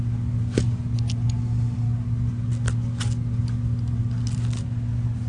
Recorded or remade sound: recorded